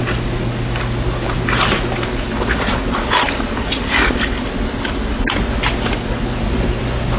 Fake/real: real